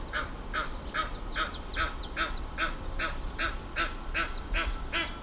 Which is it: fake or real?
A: real